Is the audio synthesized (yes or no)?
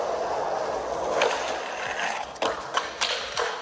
no